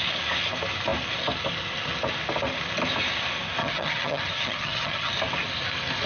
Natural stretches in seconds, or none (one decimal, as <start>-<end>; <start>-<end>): 0.0-3.6; 5.1-6.1